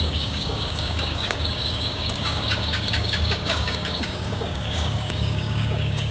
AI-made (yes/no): yes